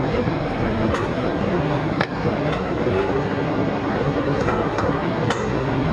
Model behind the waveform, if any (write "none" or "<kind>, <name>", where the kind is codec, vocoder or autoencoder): codec, SNAC